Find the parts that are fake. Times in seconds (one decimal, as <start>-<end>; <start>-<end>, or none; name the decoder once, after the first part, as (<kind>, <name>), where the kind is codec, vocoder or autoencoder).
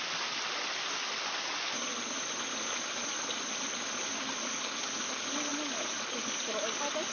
none